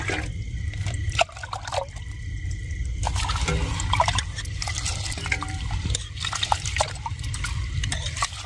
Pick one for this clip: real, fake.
real